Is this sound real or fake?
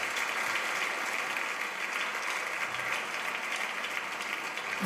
real